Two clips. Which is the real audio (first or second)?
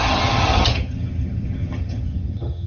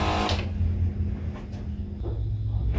second